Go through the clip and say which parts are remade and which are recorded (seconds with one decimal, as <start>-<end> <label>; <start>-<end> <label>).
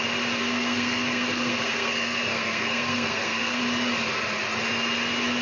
0.0-0.4 recorded; 0.4-3.6 remade; 3.6-5.4 recorded